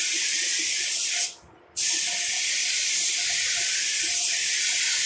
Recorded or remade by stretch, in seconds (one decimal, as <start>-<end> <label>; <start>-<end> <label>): 0.0-5.1 recorded